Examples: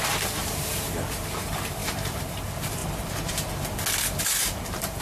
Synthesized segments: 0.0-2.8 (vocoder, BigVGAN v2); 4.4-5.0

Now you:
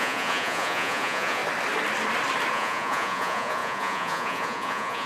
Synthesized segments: 0.0-1.4 (vocoder, Vocos); 2.5-5.1

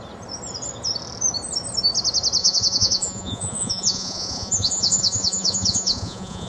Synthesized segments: 2.4-6.5 (vocoder, Vocos)

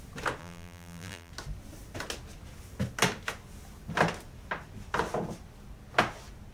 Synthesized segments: 0.4-1.3 (vocoder, BigVGAN v2)

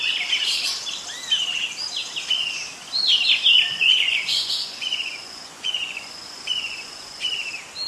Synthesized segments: 3.7-7.3 (vocoder, Vocos)

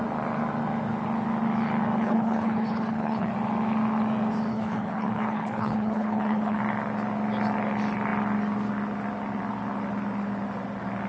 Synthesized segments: 2.0-3.3 (codec, HILCodec); 4.5-6.6